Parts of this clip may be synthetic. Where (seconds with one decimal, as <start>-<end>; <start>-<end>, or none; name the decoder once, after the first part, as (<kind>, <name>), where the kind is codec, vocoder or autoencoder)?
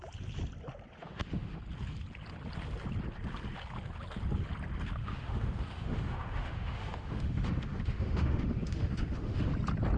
1.0-1.6 (autoencoder, DAC-VAE); 5.0-9.5